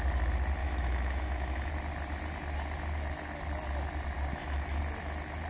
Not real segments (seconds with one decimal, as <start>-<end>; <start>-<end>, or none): 0.6-1.7; 4.3-4.8